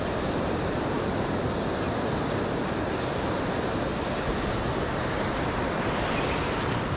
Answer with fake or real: real